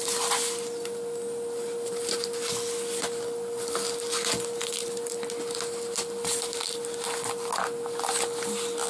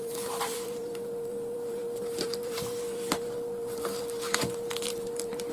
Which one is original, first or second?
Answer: first